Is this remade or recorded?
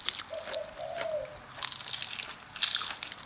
recorded